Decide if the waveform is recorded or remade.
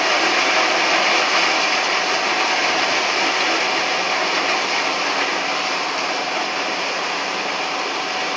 recorded